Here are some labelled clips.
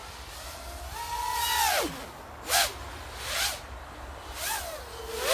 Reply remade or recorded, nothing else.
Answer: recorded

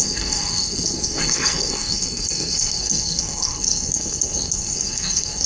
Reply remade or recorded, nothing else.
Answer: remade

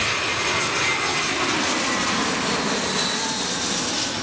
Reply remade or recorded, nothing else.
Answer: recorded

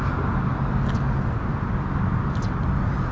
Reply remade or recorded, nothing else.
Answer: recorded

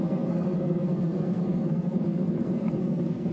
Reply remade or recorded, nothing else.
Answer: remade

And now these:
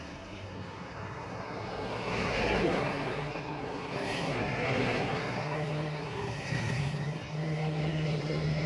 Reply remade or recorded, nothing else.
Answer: remade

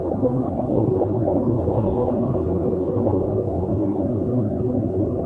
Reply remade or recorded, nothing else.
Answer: remade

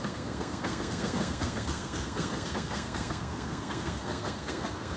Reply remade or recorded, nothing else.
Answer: remade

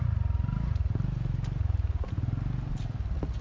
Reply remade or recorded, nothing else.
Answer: recorded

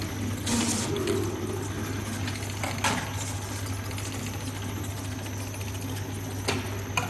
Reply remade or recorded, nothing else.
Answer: recorded